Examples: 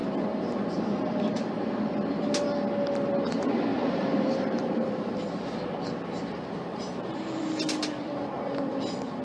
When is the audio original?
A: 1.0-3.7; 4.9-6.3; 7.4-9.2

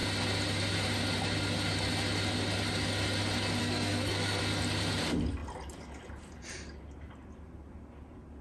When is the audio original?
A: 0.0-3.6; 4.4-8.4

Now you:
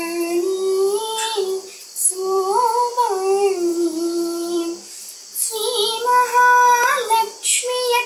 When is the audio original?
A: 0.0-1.8; 2.9-3.7; 5.0-8.1